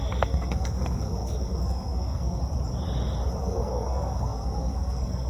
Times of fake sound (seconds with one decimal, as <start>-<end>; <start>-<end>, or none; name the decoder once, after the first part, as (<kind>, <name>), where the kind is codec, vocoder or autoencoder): 0.0-2.4 (codec, SNAC); 3.4-5.3